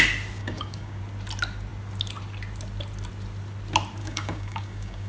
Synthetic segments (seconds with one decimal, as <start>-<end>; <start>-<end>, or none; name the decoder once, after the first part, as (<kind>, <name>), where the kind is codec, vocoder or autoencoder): 0.4-1.0 (codec, DAC); 4.0-5.1